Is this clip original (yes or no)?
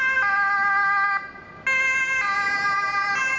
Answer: yes